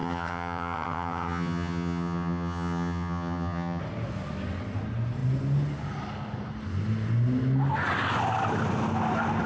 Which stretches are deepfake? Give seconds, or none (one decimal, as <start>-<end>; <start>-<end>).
0.0-3.8